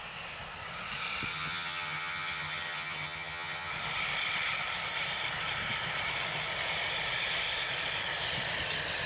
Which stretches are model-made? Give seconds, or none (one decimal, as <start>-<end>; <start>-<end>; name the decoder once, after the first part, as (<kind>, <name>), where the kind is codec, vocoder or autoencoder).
1.3-3.7 (vocoder, HiFi-GAN)